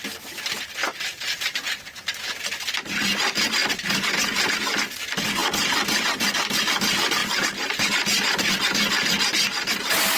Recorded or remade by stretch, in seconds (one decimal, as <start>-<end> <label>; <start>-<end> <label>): 0.0-0.8 recorded; 0.8-2.0 remade; 2.0-7.2 recorded; 7.2-7.9 remade; 7.9-10.2 recorded

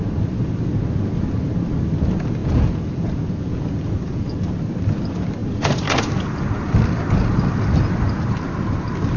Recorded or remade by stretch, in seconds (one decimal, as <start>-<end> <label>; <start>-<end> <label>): 0.0-2.4 recorded; 2.4-4.2 remade; 4.2-9.2 recorded

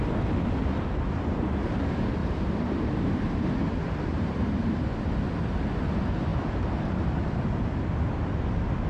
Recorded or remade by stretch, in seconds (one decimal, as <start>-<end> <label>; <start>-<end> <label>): 0.0-2.2 recorded; 2.2-4.5 remade; 4.5-8.9 recorded

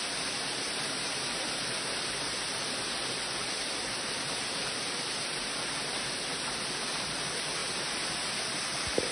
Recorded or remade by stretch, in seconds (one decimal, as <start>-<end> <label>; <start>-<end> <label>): 0.0-9.1 recorded

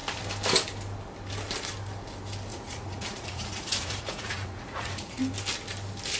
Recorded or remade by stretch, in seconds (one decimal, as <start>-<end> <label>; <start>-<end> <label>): 0.0-2.5 recorded; 2.5-5.2 remade; 5.2-6.2 recorded

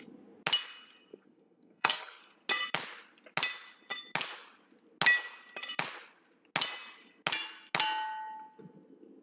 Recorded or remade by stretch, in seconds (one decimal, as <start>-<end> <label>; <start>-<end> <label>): 0.0-1.1 recorded; 1.1-2.2 remade; 2.2-9.2 recorded